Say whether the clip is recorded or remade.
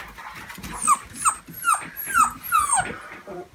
recorded